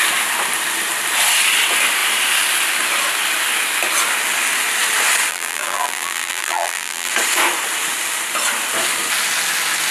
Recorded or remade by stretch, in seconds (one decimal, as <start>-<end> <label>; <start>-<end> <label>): 0.0-5.3 recorded; 5.3-7.1 remade; 7.1-9.9 recorded